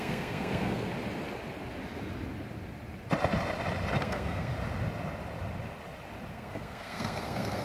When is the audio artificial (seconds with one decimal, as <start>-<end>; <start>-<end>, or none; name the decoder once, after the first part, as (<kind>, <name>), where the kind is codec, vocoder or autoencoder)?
0.0-0.9 (codec, SNAC); 4.0-4.5; 6.3-7.6